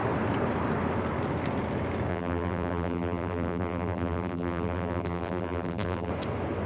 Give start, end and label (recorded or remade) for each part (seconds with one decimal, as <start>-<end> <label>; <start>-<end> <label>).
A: 0.0-2.1 recorded; 2.1-6.1 remade; 6.1-6.7 recorded